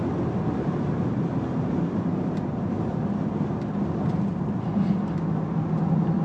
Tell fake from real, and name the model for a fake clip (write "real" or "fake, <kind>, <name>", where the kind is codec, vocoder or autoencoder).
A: real